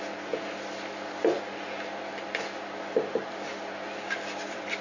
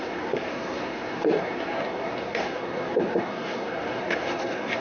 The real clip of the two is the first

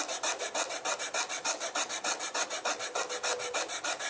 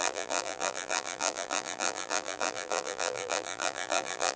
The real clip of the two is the first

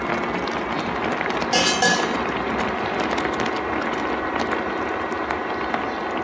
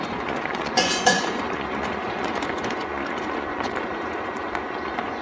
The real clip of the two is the first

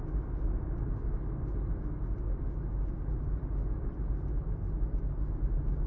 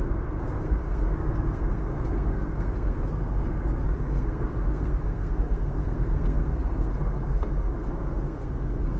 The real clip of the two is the first